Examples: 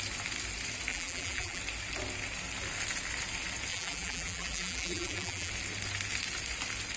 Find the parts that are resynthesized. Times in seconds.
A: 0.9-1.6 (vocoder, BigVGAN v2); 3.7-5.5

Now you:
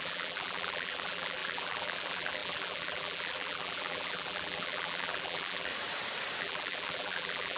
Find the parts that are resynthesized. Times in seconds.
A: 0.0-5.7 (vocoder, BigVGAN v2); 6.4-7.6

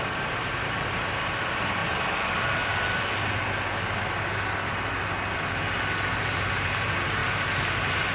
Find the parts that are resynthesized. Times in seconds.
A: 0.0-1.8 (vocoder, BigVGAN v2); 6.2-8.1

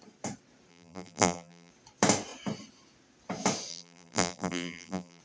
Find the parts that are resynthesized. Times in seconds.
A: 0.7-1.7 (vocoder, BigVGAN v2); 3.7-5.2

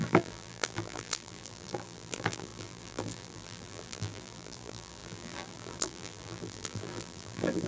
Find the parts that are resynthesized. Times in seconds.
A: 0.0-7.7 (vocoder, BigVGAN v2)

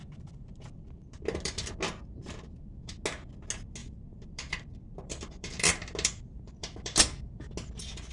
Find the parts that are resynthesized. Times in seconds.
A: 0.0-1.7 (vocoder, BigVGAN v2); 2.2-2.9; 3.8-7.5

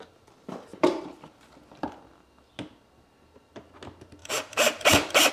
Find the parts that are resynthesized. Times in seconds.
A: 0.7-1.4 (vocoder, BigVGAN v2); 4.2-5.3

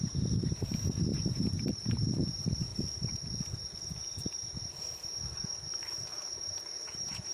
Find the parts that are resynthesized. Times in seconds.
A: 0.0-2.7 (vocoder, BigVGAN v2); 6.4-7.3